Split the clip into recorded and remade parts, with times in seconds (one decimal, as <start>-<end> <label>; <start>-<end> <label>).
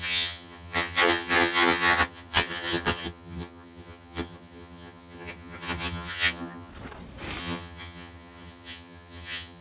0.0-6.7 remade; 6.7-7.4 recorded; 7.4-9.6 remade